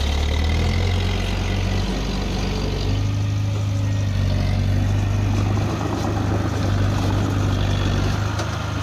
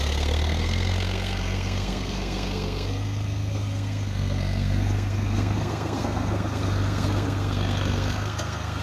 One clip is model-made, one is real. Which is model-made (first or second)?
second